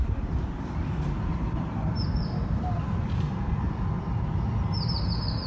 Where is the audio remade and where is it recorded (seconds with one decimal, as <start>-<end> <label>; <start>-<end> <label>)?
0.0-5.5 recorded